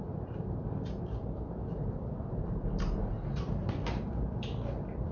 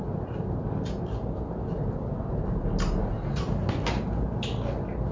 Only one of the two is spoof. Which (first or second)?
first